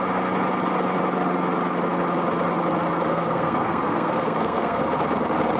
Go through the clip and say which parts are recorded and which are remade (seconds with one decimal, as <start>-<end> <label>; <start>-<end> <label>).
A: 0.0-3.1 recorded; 3.1-4.8 remade; 4.8-5.6 recorded

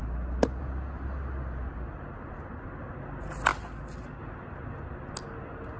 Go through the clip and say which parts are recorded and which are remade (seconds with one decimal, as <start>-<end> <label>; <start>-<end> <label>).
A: 0.0-5.8 recorded